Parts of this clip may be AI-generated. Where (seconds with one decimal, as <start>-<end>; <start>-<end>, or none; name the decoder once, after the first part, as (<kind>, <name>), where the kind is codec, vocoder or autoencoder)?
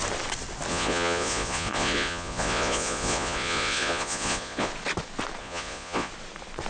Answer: 0.7-4.7 (vocoder, Vocos); 5.4-6.1